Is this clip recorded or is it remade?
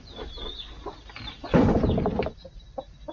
recorded